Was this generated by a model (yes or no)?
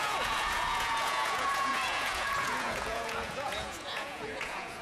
yes